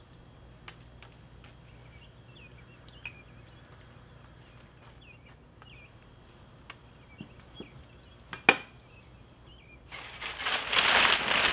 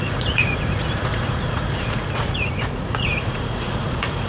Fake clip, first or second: second